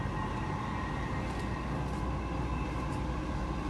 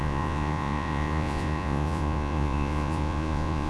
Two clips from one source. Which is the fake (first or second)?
second